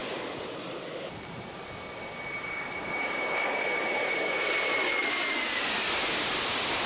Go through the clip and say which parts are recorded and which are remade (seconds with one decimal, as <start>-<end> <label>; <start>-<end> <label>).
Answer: 0.0-6.9 recorded